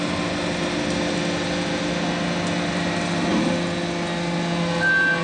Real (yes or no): yes